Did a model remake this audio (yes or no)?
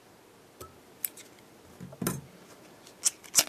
no